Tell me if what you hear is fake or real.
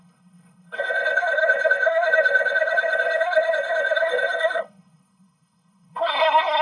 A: fake